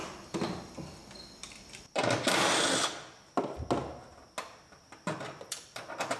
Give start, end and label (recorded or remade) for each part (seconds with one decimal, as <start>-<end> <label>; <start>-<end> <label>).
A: 0.0-1.0 remade; 1.0-4.7 recorded; 4.7-6.2 remade